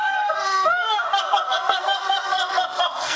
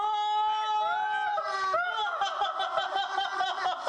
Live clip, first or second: second